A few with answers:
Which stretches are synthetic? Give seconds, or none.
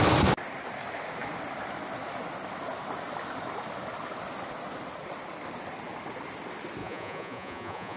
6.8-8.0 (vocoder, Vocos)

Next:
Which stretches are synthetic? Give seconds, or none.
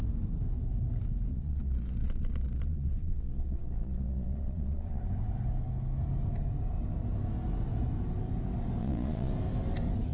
1.3-5.0 (vocoder, Vocos); 8.8-9.3